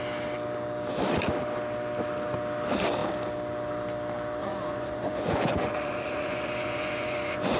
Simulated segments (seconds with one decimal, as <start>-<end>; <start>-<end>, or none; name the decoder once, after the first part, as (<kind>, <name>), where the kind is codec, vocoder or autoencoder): 4.4-7.6 (vocoder, Vocos)